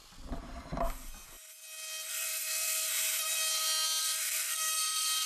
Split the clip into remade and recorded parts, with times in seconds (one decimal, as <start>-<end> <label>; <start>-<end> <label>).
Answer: 0.0-2.1 recorded; 2.1-2.9 remade; 2.9-4.0 recorded; 4.0-5.3 remade